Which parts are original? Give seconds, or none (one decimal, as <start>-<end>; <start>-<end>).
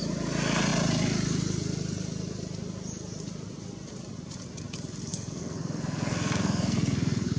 0.0-5.1